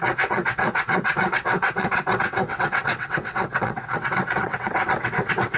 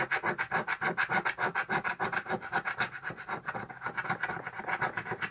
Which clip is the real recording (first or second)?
second